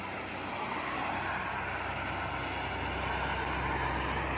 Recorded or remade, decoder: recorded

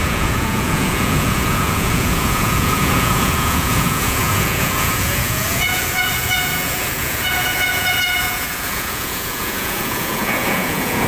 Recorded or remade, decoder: remade, vocoder, Vocos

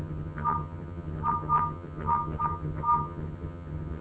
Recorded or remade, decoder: remade, vocoder, HiFi-GAN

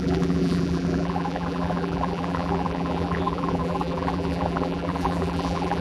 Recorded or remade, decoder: remade, vocoder, BigVGAN v2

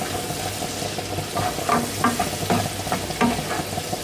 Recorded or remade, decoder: recorded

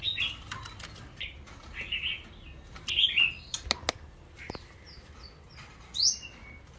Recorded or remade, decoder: recorded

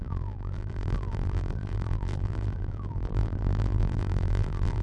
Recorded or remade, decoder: remade, vocoder, BigVGAN v2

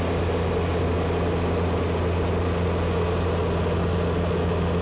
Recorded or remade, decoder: recorded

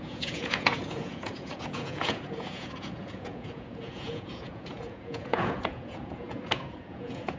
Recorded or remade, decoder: remade, vocoder, Vocos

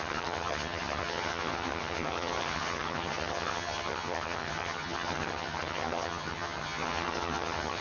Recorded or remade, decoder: remade, vocoder, HiFi-GAN